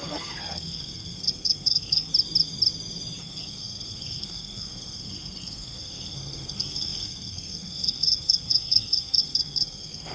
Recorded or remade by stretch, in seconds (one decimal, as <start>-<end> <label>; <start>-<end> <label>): 0.0-2.1 remade; 2.1-3.2 recorded; 3.2-10.1 remade

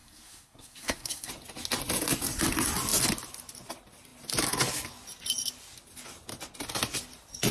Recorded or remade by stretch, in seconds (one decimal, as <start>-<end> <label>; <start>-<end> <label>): 0.0-1.3 remade; 1.3-7.5 recorded

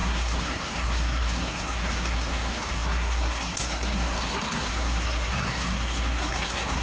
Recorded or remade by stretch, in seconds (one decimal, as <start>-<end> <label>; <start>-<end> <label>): 0.0-6.8 remade